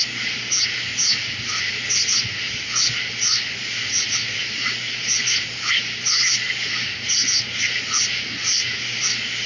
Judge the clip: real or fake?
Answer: real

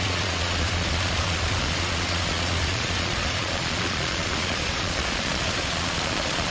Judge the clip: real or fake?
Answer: fake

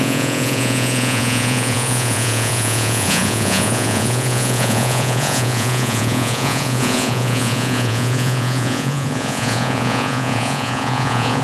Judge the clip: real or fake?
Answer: fake